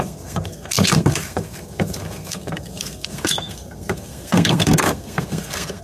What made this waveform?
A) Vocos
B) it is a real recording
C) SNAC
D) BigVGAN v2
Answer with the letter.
C